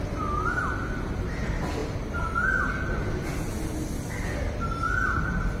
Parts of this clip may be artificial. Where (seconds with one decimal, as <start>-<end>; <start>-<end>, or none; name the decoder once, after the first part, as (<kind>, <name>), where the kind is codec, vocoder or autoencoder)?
none